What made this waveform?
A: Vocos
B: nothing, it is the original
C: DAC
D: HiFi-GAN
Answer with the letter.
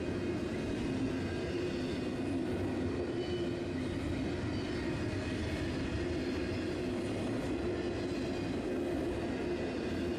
B